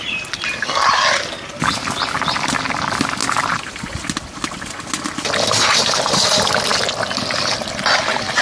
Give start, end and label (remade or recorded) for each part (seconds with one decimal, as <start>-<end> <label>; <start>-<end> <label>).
0.0-3.2 recorded; 3.2-4.0 remade; 4.0-8.4 recorded